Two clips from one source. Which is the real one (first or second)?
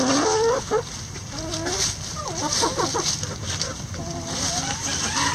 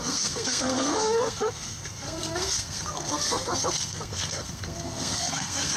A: first